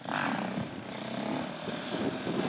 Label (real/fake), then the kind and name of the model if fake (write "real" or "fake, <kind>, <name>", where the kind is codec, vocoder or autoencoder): real